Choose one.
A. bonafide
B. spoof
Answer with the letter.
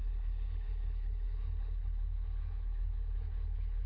B